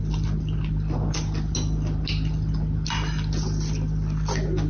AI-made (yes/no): no